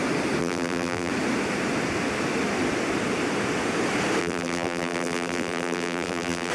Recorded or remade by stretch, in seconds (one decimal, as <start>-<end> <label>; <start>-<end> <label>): 0.0-0.4 recorded; 0.4-1.1 remade; 1.1-4.2 recorded; 4.2-6.5 remade